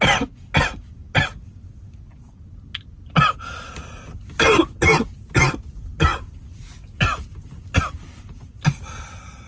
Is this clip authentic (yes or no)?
yes